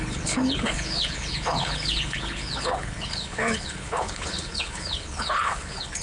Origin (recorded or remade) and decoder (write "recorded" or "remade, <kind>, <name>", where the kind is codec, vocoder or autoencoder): remade, codec, HILCodec